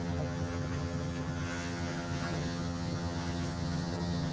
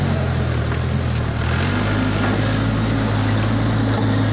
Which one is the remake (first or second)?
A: first